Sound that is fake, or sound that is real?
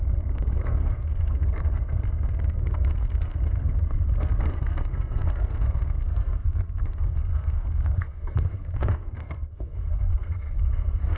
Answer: fake